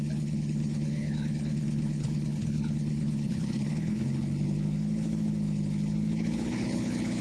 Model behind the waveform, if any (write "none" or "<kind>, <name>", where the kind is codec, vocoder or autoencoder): codec, HILCodec